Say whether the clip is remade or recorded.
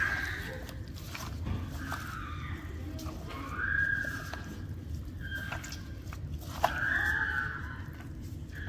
recorded